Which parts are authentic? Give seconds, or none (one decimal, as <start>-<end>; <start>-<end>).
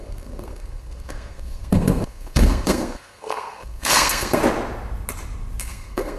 4.4-5.6